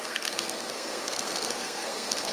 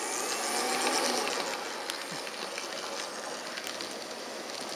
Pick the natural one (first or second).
second